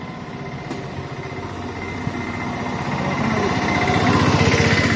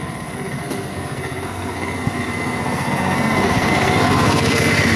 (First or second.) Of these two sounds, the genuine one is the first